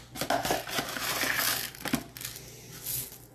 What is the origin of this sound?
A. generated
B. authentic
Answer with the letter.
B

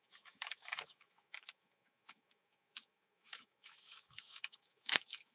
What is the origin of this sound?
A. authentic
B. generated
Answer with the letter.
B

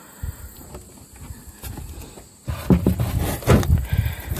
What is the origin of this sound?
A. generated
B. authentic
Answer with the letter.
B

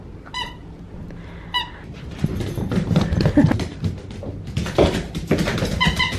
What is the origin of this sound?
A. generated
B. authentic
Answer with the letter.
A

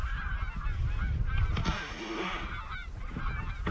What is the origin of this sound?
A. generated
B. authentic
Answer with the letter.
B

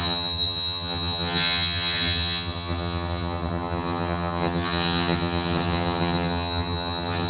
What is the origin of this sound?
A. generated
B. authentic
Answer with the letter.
A